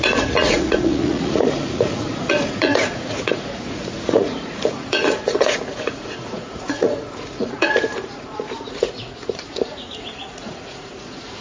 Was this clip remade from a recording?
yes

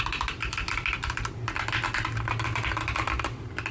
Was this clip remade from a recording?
no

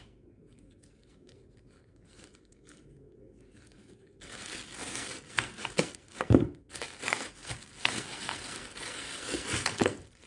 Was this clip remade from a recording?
yes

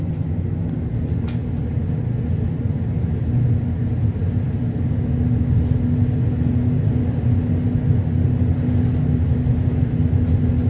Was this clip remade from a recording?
no